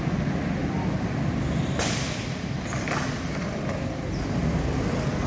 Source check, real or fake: real